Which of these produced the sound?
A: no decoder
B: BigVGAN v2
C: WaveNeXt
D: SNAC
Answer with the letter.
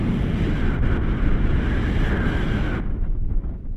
A